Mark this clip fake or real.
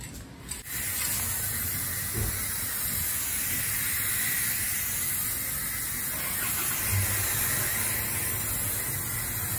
real